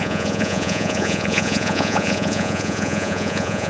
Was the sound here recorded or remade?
remade